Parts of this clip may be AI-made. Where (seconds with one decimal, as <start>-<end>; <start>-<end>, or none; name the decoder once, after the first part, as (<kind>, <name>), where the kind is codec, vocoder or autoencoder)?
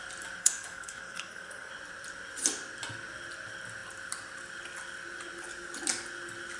0.4-1.7 (codec, SNAC)